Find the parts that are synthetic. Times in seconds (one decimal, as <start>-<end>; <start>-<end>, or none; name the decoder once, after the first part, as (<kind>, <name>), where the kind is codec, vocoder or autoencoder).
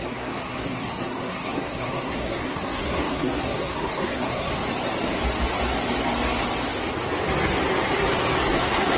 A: 0.0-4.6 (codec, SNAC); 8.5-9.0